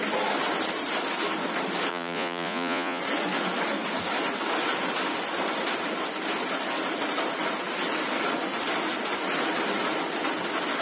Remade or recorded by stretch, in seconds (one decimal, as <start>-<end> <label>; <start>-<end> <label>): 0.0-1.9 recorded; 1.9-3.0 remade; 3.0-10.8 recorded